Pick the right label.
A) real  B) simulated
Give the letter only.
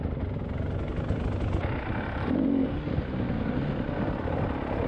A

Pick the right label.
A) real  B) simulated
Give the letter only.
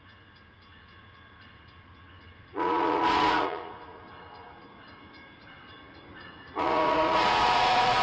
B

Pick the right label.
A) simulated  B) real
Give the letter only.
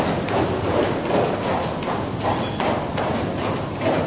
B